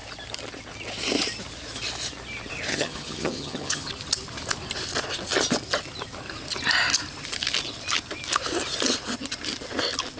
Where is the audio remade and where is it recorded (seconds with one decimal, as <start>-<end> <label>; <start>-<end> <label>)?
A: 0.0-2.7 recorded; 2.7-3.9 remade; 3.9-10.2 recorded